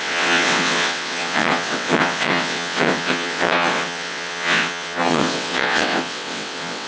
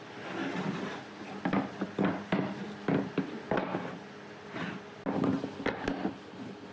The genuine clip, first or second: second